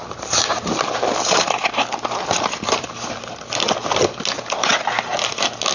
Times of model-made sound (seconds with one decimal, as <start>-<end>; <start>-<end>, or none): 0.0-1.6